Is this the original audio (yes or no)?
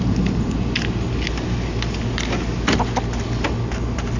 yes